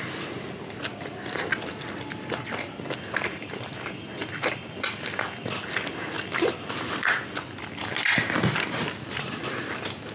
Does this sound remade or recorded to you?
recorded